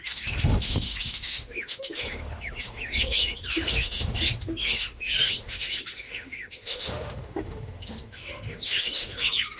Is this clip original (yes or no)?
no